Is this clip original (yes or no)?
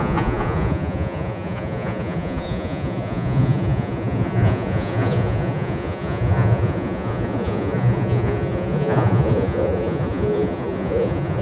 no